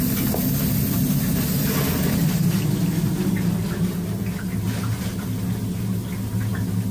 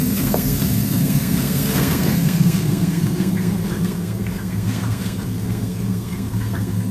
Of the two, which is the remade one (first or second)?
second